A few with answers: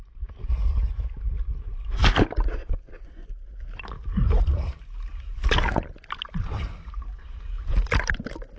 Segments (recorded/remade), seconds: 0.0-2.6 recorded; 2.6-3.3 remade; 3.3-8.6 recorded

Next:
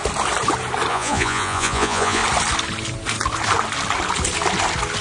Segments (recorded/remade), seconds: 0.0-0.9 recorded; 0.9-2.2 remade; 2.2-5.0 recorded

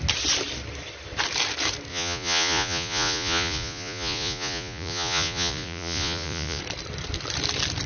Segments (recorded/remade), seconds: 0.0-1.9 recorded; 1.9-6.6 remade; 6.6-7.9 recorded

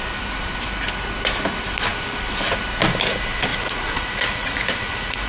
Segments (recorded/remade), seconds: 0.0-3.5 recorded; 3.5-5.3 remade

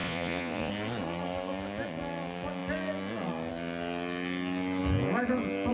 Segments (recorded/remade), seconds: 0.0-0.7 remade; 0.7-5.7 recorded

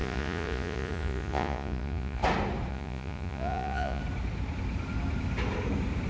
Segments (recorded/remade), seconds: 0.0-2.2 remade; 2.2-2.7 recorded; 2.7-4.0 remade; 4.0-6.1 recorded

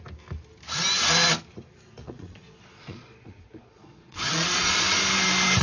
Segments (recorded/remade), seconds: 0.0-2.0 recorded; 2.0-5.0 remade; 5.0-5.6 recorded